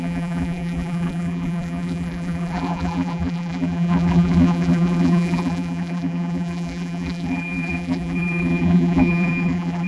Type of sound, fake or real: fake